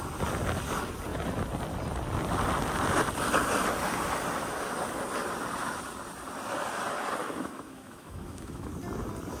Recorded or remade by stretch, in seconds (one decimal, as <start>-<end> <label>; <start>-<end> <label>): 0.0-7.2 recorded; 7.2-8.7 remade; 8.7-9.4 recorded